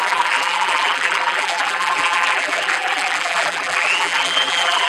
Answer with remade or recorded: remade